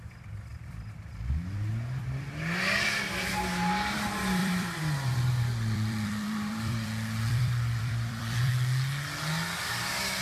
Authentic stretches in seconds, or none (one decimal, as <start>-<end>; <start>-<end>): 0.0-0.5; 1.0-4.4; 8.5-10.2